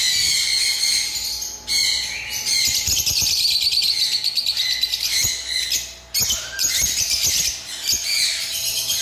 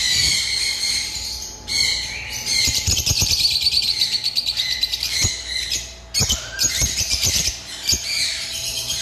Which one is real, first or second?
first